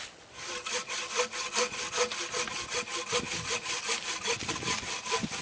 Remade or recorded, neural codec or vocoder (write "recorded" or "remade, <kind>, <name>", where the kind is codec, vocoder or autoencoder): recorded